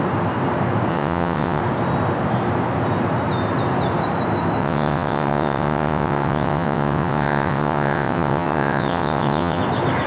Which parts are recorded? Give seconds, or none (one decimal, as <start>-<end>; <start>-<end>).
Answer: 0.0-0.9; 1.6-4.6; 9.6-10.1